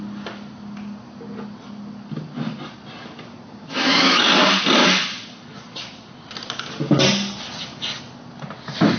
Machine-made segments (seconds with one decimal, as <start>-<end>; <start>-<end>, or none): 3.7-4.3